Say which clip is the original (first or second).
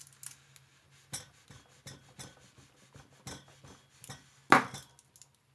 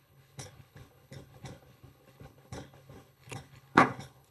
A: first